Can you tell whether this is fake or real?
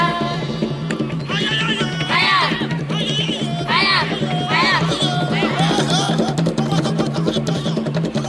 real